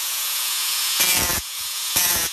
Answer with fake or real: fake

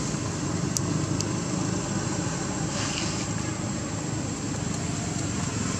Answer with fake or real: real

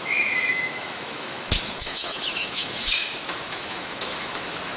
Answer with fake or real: fake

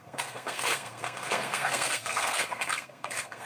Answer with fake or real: fake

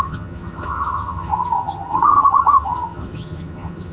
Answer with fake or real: fake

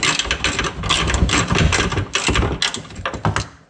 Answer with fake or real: real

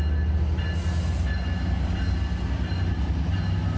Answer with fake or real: real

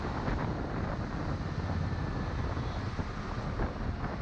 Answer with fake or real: real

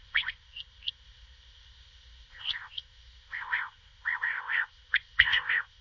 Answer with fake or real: fake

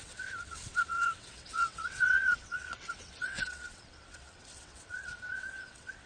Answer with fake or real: fake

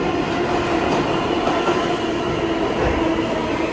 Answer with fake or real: real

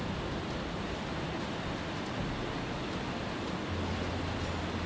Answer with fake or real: real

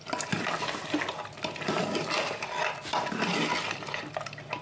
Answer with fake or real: real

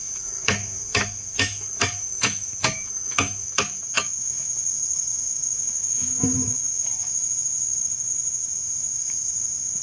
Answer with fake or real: fake